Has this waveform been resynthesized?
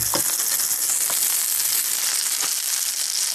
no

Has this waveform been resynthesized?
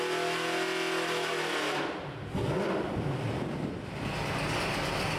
no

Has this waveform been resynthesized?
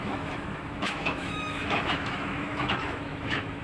yes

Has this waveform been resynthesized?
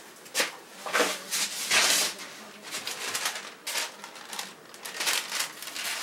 no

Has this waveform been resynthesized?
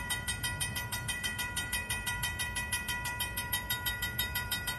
yes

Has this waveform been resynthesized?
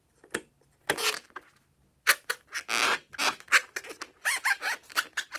no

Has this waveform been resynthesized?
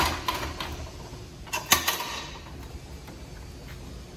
no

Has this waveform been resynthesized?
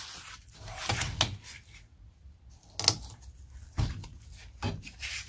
no